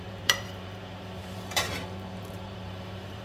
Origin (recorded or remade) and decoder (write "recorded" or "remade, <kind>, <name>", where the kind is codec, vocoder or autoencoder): remade, vocoder, BigVGAN v2